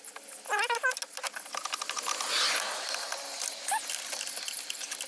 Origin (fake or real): real